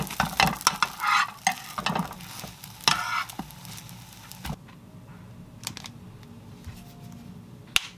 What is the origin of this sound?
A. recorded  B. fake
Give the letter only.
A